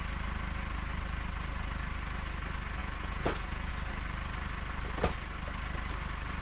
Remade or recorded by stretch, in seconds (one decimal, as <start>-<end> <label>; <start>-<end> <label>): 0.0-2.8 recorded; 2.8-3.7 remade; 3.7-6.4 recorded